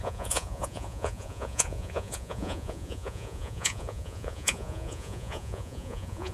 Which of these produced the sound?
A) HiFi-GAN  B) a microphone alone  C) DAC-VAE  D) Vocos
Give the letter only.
D